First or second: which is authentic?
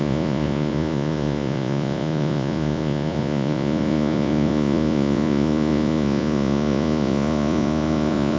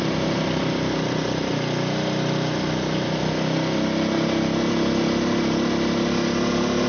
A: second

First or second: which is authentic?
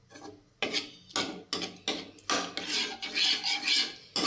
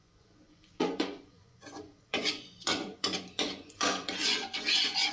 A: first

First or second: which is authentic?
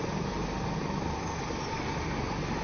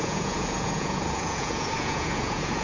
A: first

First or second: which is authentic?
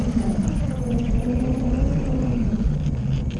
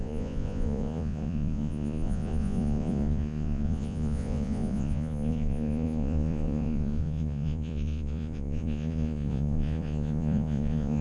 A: first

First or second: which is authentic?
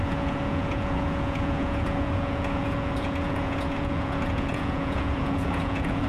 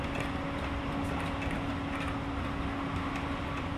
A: second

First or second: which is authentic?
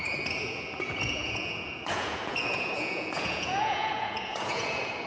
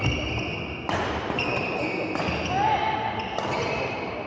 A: second